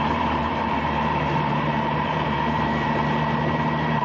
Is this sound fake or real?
fake